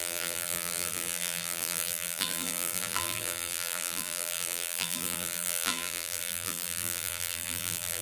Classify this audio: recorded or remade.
remade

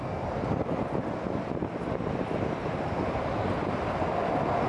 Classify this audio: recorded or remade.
recorded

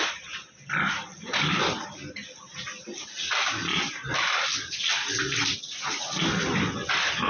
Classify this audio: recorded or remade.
recorded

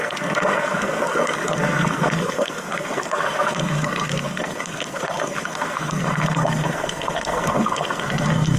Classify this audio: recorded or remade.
remade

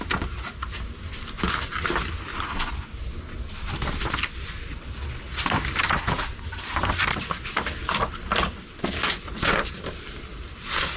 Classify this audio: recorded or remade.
recorded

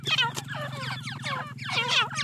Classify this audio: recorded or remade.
recorded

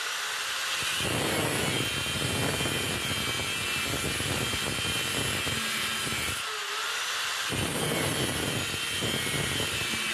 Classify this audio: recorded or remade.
recorded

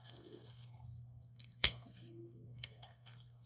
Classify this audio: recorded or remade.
remade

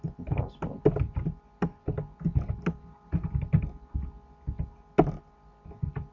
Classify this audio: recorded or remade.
recorded